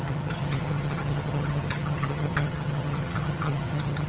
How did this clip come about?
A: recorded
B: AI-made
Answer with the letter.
B